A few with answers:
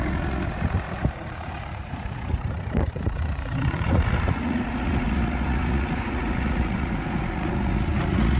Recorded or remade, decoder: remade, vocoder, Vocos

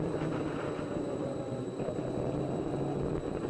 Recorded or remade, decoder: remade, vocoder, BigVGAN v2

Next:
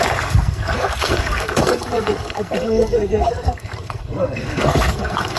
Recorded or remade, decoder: remade, codec, SNAC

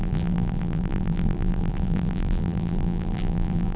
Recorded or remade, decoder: remade, vocoder, BigVGAN v2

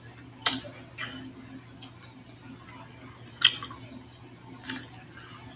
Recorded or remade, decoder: recorded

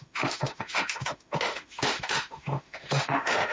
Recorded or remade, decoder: remade, autoencoder, DAC-VAE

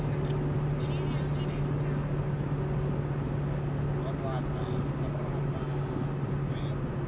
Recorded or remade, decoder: recorded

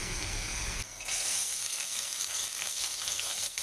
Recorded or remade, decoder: remade, codec, SNAC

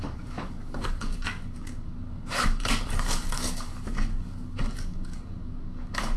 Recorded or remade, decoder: remade, codec, DAC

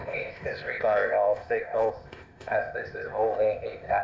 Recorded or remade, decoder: remade, codec, ZipCodec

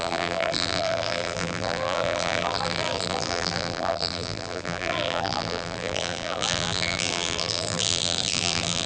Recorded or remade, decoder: remade, vocoder, BigVGAN v2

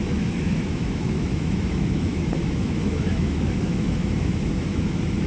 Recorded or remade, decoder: remade, autoencoder, DAC-VAE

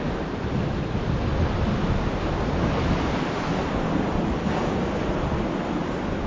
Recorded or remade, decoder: recorded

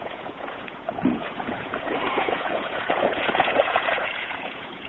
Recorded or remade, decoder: remade, vocoder, Vocos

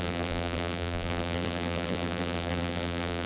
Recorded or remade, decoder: remade, vocoder, BigVGAN v2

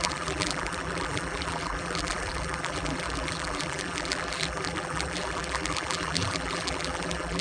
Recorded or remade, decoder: remade, vocoder, BigVGAN v2